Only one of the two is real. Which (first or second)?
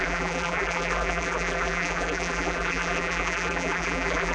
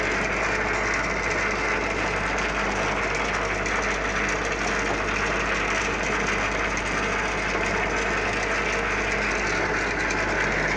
second